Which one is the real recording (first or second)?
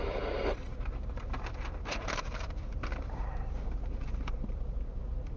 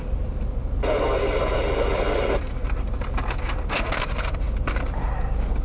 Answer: second